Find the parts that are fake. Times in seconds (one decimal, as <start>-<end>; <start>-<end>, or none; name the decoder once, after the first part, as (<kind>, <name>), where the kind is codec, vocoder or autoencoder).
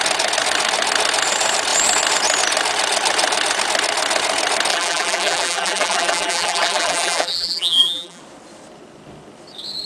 4.7-8.2 (vocoder, BigVGAN v2)